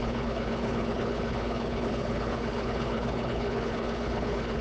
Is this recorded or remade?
remade